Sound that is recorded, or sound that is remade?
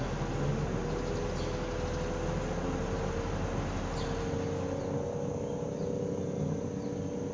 recorded